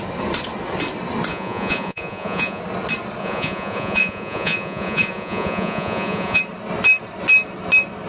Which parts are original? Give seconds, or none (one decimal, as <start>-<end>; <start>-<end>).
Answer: 0.0-1.3; 2.6-3.2; 6.4-8.1